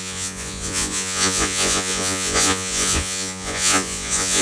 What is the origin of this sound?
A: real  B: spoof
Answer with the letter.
B